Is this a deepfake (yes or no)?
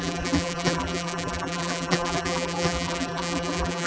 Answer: yes